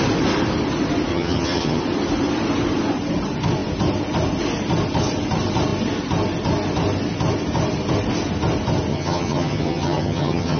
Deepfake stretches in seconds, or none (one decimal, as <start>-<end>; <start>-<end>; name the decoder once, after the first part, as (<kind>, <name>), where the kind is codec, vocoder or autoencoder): 1.1-1.8 (vocoder, HiFi-GAN); 8.9-10.6